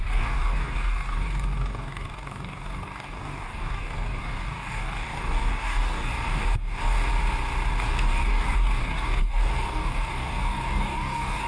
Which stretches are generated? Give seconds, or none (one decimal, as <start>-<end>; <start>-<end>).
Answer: 0.0-7.1; 7.9-11.5